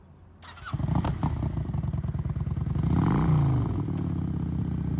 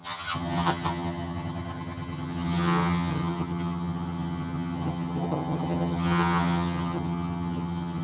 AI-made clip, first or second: second